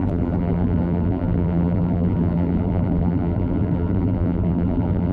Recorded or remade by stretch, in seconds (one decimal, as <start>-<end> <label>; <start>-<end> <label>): 0.0-5.1 remade